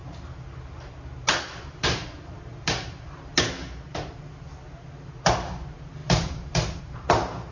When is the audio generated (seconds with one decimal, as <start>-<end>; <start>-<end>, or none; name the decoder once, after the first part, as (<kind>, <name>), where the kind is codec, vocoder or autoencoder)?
1.6-3.3 (vocoder, BigVGAN v2); 4.7-7.5